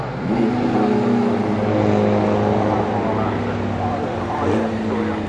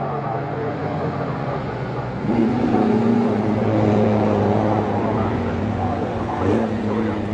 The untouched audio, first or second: first